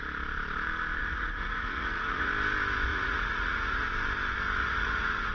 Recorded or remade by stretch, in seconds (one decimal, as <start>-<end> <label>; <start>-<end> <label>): 0.0-1.0 recorded; 1.0-2.3 remade; 2.3-2.9 recorded; 2.9-3.9 remade; 3.9-4.6 recorded; 4.6-5.3 remade